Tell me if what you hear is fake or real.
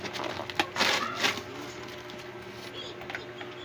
real